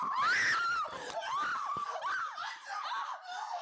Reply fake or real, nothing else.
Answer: real